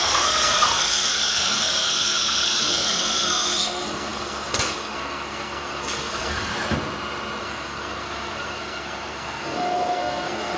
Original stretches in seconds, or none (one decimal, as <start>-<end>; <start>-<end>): 6.5-7.4